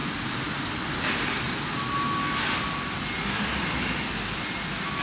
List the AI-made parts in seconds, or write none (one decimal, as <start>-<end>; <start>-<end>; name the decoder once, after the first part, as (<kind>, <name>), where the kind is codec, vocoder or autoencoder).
none